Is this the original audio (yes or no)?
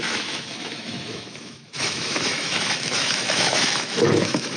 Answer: no